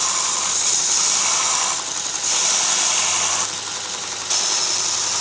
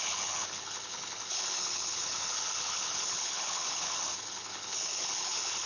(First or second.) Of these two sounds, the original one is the first